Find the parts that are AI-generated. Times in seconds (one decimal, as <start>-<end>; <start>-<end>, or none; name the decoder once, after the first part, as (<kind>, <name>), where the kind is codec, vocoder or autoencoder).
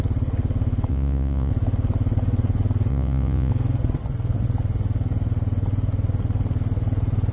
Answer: 0.9-1.5 (vocoder, Vocos); 2.9-3.5